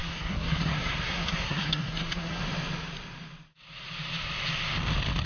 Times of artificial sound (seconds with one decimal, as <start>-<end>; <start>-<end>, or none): 0.0-2.4